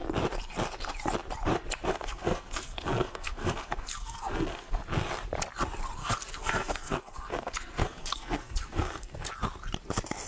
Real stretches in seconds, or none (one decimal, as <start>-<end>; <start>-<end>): 0.0-1.9; 4.8-6.0; 9.3-10.3